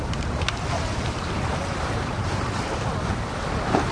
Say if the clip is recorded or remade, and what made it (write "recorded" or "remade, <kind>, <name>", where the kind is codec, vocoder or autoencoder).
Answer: recorded